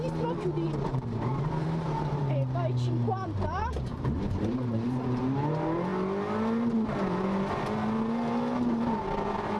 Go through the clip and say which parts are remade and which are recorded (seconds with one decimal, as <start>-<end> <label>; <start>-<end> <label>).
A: 0.0-0.9 recorded; 0.9-2.4 remade; 2.4-3.9 recorded; 3.9-5.2 remade; 5.2-9.6 recorded